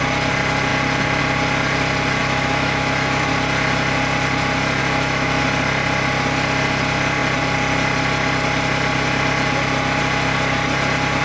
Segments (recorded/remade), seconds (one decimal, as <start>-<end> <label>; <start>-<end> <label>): 0.0-2.2 recorded; 2.2-3.3 remade; 3.3-4.8 recorded; 4.8-5.4 remade; 5.4-11.2 recorded